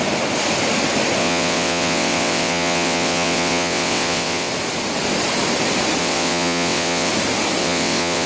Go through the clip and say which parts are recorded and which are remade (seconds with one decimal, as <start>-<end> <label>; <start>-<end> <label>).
0.0-1.2 recorded; 1.2-4.5 remade; 4.5-6.0 recorded; 6.0-7.1 remade; 7.1-7.6 recorded; 7.6-8.3 remade